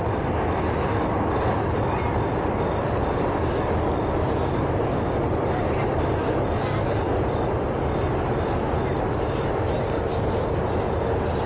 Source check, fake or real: real